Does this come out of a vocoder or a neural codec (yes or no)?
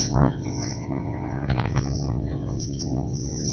yes